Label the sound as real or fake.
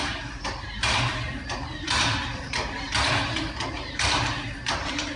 fake